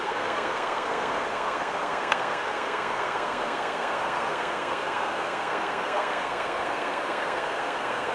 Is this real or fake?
fake